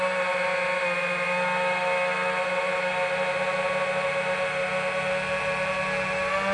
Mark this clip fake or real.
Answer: real